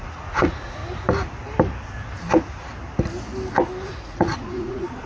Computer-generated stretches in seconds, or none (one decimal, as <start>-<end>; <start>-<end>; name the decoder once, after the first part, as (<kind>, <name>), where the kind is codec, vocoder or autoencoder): 0.0-0.8 (vocoder, Vocos); 3.9-5.1